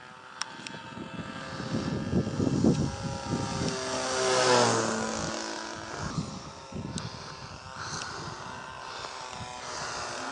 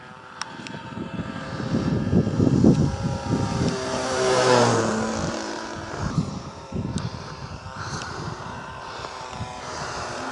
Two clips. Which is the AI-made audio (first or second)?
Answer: second